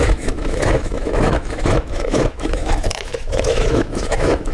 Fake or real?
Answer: fake